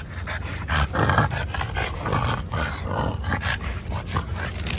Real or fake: real